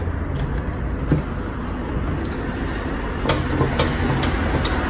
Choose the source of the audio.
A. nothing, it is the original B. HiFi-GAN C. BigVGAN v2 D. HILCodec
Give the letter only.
A